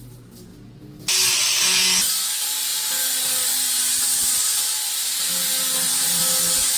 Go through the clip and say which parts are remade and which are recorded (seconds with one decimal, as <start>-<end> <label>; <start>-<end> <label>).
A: 0.0-6.8 recorded